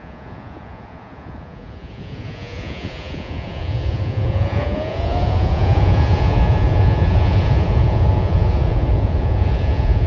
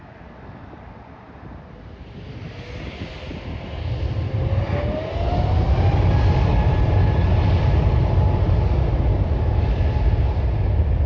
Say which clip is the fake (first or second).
first